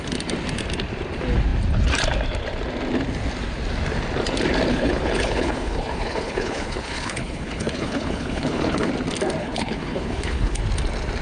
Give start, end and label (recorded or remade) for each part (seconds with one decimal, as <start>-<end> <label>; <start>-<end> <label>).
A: 0.0-4.7 recorded; 4.7-8.9 remade; 8.9-9.4 recorded; 9.4-10.6 remade; 10.6-11.2 recorded